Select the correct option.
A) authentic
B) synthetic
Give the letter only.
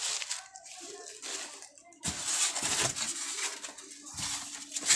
A